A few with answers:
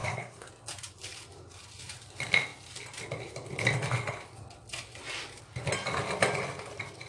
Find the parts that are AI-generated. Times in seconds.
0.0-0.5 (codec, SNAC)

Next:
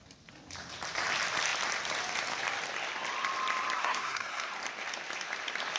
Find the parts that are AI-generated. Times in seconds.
3.8-4.5 (codec, SNAC)